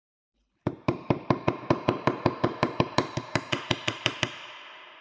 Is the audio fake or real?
fake